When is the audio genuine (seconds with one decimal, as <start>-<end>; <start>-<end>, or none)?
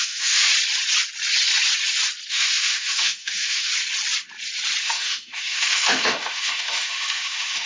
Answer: 0.5-2.3; 3.7-4.8